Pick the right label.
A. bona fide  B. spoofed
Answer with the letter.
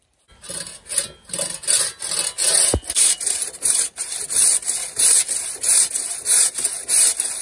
A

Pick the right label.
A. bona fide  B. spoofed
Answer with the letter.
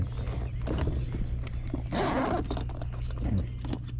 A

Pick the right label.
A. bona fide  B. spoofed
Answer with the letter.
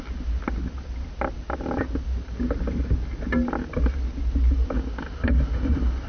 A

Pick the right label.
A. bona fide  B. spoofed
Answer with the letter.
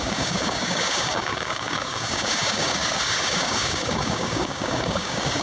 B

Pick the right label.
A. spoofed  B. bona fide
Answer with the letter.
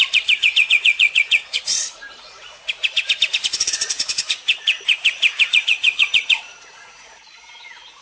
A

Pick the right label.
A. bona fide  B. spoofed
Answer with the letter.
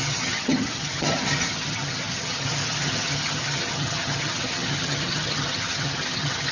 B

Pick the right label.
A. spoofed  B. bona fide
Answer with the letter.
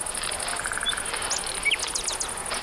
B